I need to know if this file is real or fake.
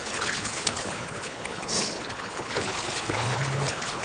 fake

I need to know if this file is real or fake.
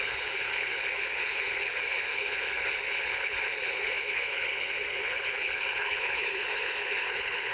fake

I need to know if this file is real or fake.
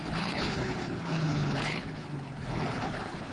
fake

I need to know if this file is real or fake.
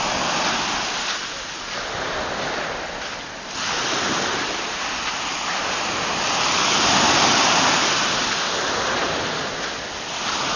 real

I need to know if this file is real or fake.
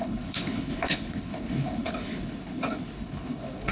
fake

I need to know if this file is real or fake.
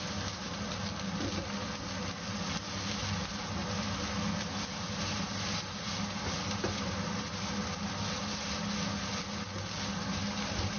real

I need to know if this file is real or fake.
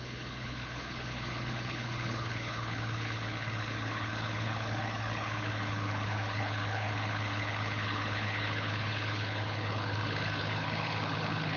fake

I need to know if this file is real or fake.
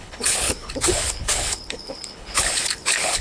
fake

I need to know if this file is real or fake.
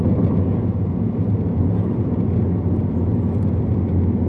real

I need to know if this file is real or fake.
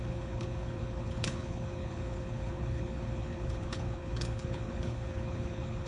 fake